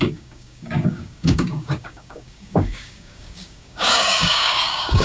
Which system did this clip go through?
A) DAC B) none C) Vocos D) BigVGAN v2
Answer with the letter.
A